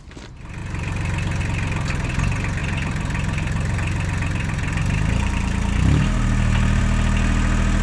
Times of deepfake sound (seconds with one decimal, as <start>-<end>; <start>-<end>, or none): 0.6-1.4; 2.6-6.8